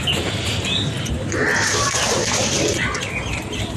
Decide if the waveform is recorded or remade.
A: recorded